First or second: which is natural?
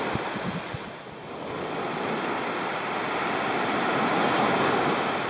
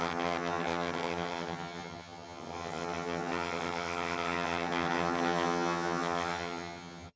first